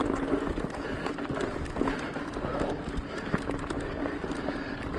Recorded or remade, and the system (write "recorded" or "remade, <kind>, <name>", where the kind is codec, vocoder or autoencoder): recorded